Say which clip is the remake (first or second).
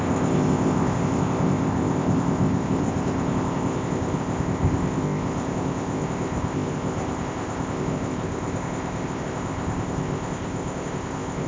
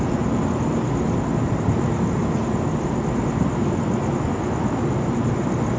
first